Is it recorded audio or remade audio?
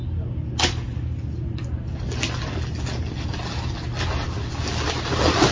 recorded